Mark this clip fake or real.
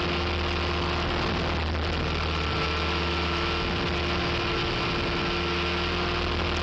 real